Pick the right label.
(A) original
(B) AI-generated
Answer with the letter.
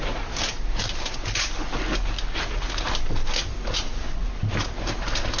A